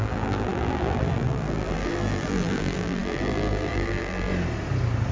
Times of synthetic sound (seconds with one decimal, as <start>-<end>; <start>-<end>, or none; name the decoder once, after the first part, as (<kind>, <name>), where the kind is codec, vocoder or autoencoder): 0.0-4.3 (vocoder, BigVGAN v2)

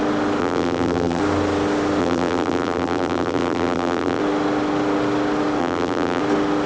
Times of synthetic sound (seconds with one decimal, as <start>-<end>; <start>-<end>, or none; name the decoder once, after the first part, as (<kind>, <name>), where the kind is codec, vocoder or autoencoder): 0.4-1.2 (vocoder, BigVGAN v2); 2.0-4.2; 5.6-6.2

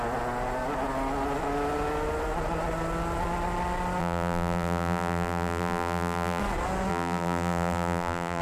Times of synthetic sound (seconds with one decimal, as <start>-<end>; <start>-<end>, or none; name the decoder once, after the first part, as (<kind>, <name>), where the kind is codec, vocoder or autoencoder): 4.0-6.4 (vocoder, BigVGAN v2); 6.9-8.4

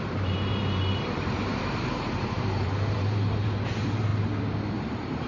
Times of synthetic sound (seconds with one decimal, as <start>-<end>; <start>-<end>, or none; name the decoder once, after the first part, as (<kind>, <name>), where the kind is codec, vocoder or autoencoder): 0.0-4.1 (vocoder, BigVGAN v2); 4.7-5.3